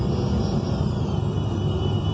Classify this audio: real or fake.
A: real